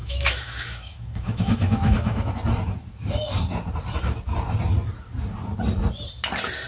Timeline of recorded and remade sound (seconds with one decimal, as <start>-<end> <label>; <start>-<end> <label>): 0.0-2.3 remade; 2.3-6.7 recorded